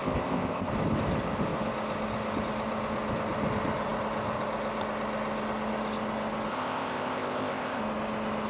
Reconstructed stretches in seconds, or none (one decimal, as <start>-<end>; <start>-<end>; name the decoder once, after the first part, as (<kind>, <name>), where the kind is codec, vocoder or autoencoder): 0.0-0.7 (codec, ZipCodec); 6.5-7.8